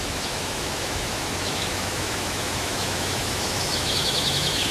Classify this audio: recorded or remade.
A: remade